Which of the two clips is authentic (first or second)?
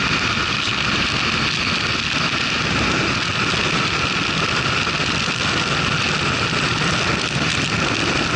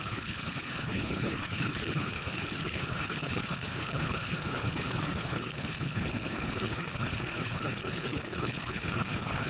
first